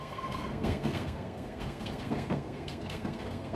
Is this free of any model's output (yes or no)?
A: no